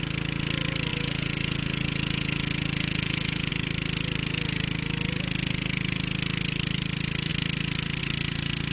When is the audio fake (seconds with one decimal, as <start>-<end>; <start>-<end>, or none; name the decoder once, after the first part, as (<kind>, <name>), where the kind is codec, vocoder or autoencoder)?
0.9-3.5 (vocoder, Vocos)